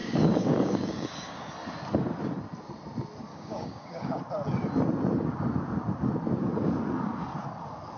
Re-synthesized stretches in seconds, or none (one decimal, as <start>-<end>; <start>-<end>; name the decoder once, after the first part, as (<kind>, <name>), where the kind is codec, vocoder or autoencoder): 0.0-1.5 (codec, DAC); 3.3-4.2